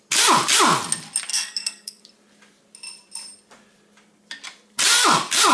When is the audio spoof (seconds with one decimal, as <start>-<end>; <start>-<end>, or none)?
1.3-2.0